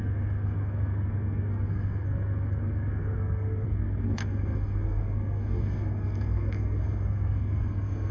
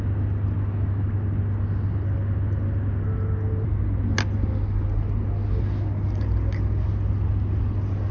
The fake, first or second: first